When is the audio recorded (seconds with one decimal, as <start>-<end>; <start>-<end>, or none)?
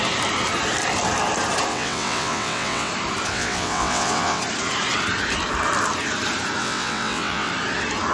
0.0-1.7; 2.9-3.3; 4.4-6.6; 7.5-8.1